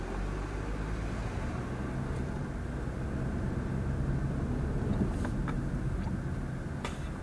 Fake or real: real